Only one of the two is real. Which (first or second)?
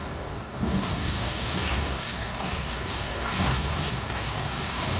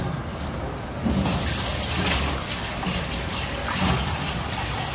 second